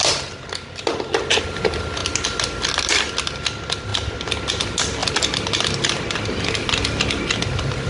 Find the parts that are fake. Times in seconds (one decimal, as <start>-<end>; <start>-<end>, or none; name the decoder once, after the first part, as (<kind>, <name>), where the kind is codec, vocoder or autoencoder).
none